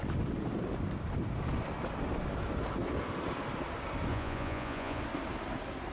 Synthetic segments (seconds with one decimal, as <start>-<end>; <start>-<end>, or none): 4.1-5.0